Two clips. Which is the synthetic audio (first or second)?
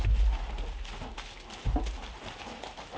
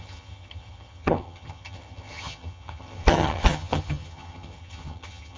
second